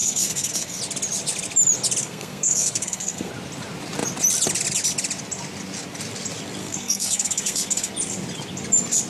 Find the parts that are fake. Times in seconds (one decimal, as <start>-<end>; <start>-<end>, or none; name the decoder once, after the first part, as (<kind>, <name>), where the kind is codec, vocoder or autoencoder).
0.0-0.8 (codec, SNAC); 2.0-3.3; 6.6-7.9